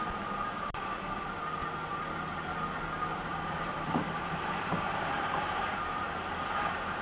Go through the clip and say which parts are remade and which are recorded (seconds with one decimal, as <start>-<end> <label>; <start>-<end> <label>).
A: 0.0-3.1 recorded; 3.1-6.3 remade; 6.3-7.0 recorded